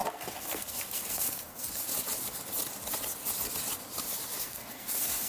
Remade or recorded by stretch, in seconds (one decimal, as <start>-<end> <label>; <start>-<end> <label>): 0.0-1.9 remade; 1.9-4.4 recorded; 4.4-5.3 remade

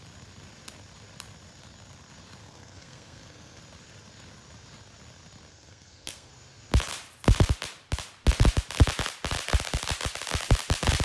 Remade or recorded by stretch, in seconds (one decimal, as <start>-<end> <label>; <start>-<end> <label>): 0.0-2.4 recorded; 2.4-3.6 remade; 3.6-5.5 recorded; 5.5-6.3 remade; 6.3-11.0 recorded

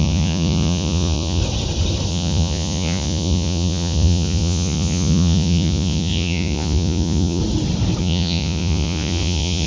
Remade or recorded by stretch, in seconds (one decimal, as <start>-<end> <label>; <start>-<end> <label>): 0.0-1.4 remade; 1.4-2.1 recorded; 2.1-7.4 remade; 7.4-8.0 recorded; 8.0-9.7 remade

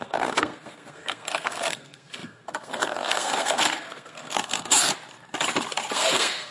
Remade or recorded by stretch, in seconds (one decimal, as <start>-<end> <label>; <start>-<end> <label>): 0.0-4.9 remade; 4.9-5.9 recorded; 5.9-6.5 remade

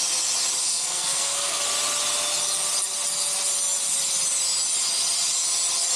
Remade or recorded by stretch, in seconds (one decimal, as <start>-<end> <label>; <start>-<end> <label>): 0.0-0.6 recorded; 0.6-1.6 remade; 1.6-6.0 recorded